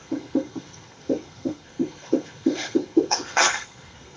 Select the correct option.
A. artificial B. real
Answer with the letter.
A